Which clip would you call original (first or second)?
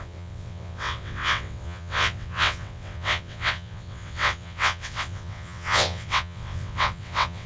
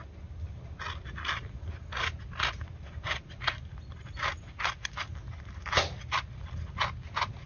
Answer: second